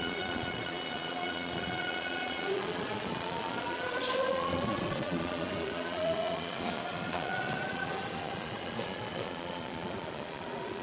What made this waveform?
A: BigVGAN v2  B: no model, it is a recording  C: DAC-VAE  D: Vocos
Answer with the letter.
D